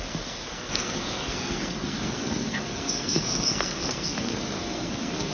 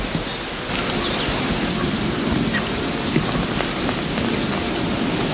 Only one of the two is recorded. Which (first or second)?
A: second